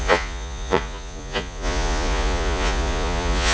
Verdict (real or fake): fake